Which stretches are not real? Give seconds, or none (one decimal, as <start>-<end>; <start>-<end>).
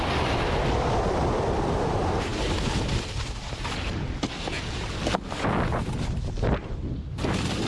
none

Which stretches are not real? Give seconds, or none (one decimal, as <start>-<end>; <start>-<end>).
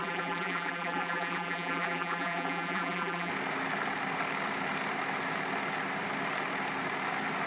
0.0-3.3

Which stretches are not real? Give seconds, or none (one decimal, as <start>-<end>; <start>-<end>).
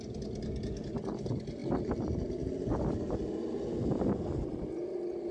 1.6-2.5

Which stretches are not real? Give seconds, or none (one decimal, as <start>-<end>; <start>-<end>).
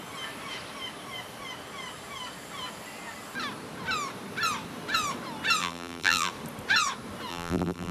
5.6-6.3; 7.3-7.9